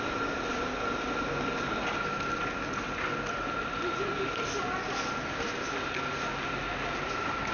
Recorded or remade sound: recorded